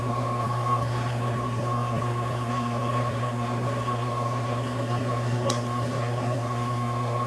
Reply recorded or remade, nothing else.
remade